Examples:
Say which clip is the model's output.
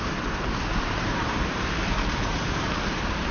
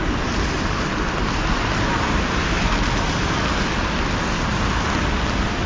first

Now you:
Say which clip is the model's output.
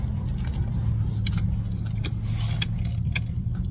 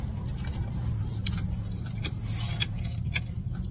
second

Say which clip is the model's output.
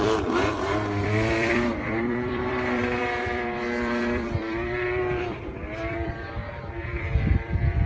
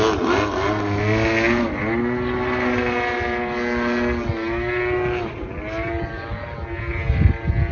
first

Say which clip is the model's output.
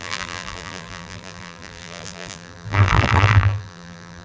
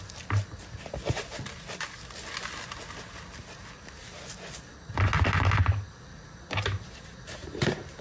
first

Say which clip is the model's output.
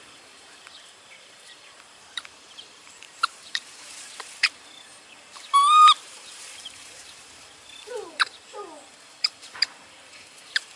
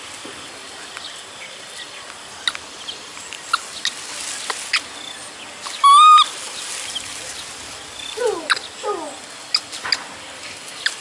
first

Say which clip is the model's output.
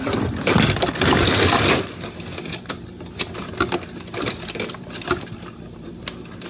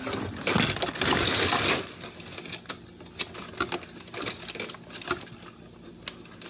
first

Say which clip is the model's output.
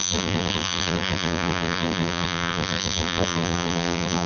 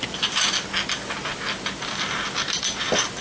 first